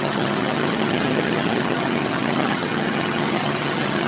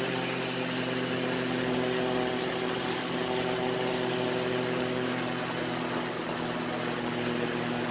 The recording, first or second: second